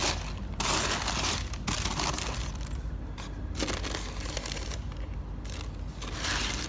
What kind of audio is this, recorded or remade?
recorded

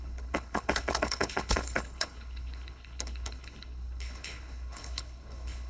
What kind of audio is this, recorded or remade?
remade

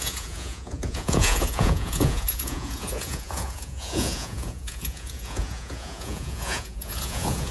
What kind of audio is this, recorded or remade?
remade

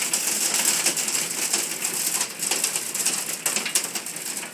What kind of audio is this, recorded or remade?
recorded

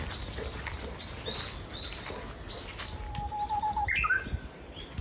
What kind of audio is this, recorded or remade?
recorded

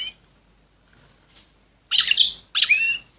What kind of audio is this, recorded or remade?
recorded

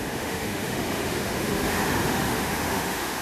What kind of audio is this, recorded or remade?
remade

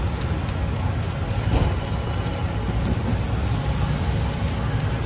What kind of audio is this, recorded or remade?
recorded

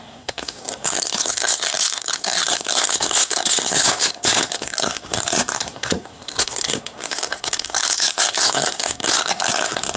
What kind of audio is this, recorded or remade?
remade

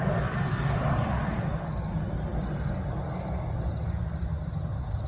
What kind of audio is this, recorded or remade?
recorded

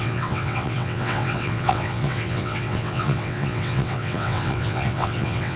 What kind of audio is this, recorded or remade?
remade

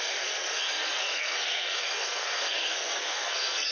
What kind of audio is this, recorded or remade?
remade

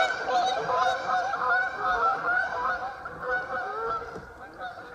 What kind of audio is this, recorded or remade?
recorded